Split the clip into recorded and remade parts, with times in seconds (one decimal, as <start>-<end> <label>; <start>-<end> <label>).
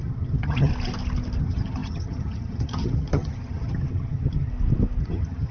0.0-0.7 remade; 0.7-1.4 recorded; 1.4-4.5 remade; 4.5-5.0 recorded; 5.0-5.5 remade